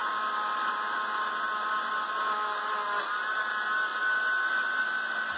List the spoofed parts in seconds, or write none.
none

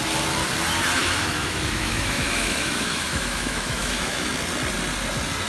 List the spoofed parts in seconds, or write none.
1.0-4.3 (autoencoder, DAC-VAE)